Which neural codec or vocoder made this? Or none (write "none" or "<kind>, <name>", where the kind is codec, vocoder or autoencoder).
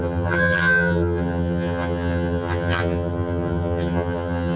vocoder, HiFi-GAN